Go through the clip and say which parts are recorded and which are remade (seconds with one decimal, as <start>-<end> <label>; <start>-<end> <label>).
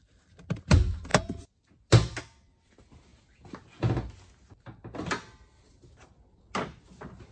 0.0-7.3 recorded